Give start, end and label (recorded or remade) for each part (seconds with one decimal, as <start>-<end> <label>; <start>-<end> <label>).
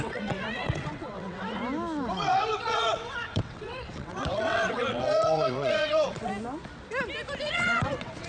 0.0-1.6 remade; 1.6-2.1 recorded; 2.1-6.3 remade; 6.3-7.4 recorded; 7.4-8.3 remade